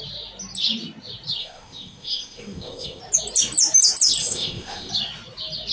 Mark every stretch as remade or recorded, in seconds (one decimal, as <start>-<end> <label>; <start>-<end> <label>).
0.0-1.4 recorded; 1.4-3.0 remade; 3.0-4.2 recorded; 4.2-4.9 remade; 4.9-5.7 recorded